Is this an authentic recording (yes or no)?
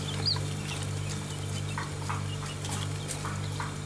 yes